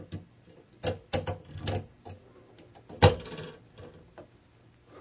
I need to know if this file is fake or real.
real